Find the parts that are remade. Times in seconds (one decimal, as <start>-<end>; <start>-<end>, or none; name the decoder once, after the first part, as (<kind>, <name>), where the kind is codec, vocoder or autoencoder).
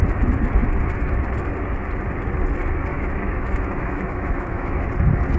2.9-4.9 (autoencoder, DAC-VAE)